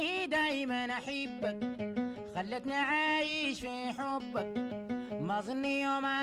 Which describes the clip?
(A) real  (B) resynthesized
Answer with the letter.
A